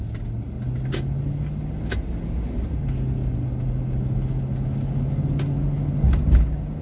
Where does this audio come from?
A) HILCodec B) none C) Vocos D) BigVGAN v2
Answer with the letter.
B